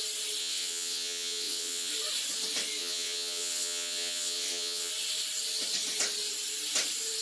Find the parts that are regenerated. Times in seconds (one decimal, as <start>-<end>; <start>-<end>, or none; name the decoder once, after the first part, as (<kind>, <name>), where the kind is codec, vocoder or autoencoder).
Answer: 0.4-1.9 (vocoder, WaveNeXt); 2.8-4.9